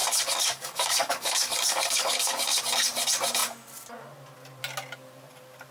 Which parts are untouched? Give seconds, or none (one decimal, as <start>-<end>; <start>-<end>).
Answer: 2.6-5.7